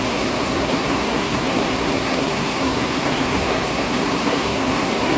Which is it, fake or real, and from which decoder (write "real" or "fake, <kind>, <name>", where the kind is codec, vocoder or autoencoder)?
fake, codec, SNAC